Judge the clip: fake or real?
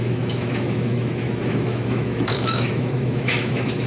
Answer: fake